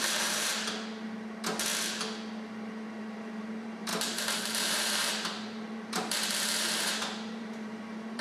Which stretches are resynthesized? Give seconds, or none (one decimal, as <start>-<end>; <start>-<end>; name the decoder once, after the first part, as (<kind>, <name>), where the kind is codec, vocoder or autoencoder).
0.0-0.5 (vocoder, BigVGAN v2); 3.0-8.2